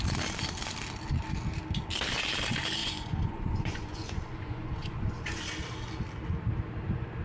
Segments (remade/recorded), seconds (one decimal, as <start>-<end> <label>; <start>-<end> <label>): 0.0-2.8 recorded; 2.8-5.5 remade; 5.5-7.2 recorded